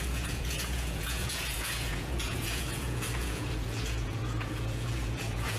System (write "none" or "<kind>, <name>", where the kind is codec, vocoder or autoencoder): vocoder, Vocos